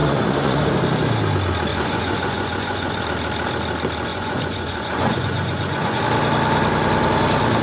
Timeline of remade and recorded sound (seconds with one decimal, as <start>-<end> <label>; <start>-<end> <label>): 0.0-0.6 remade; 0.6-1.7 recorded; 1.7-3.0 remade; 3.0-4.1 recorded; 4.1-6.0 remade; 6.0-7.6 recorded